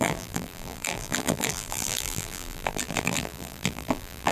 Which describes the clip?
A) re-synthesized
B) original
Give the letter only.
A